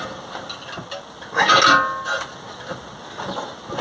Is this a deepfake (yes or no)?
no